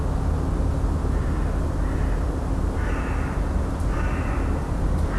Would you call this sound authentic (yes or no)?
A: yes